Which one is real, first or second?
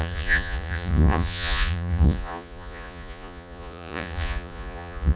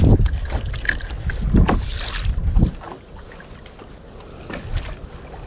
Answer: second